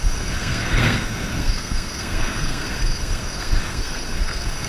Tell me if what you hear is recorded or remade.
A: remade